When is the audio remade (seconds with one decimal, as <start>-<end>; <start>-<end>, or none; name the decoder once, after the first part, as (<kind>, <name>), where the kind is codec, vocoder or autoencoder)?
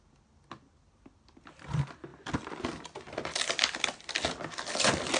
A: none